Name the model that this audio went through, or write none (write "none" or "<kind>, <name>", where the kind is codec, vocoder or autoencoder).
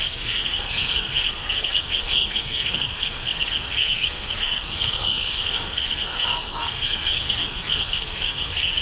codec, SNAC